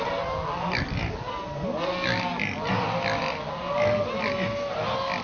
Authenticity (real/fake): real